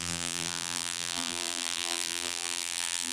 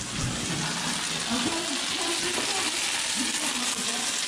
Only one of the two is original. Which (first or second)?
second